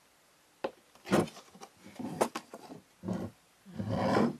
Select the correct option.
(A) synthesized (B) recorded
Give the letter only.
B